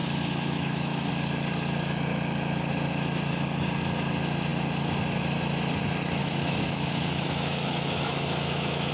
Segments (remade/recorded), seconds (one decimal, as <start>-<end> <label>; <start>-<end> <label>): 0.0-1.1 remade; 1.1-6.2 recorded; 6.2-8.9 remade